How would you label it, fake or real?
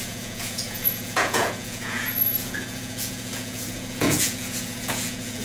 fake